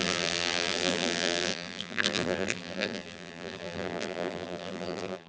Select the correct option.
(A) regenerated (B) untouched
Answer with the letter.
A